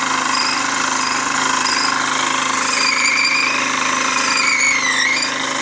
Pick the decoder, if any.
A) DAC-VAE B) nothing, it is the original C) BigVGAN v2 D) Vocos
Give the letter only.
B